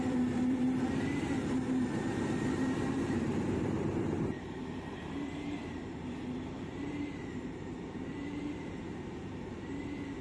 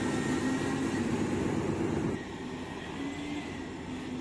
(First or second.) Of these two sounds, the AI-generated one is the first